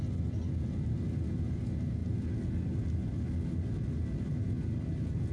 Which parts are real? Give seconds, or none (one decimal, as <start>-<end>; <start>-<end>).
0.0-5.3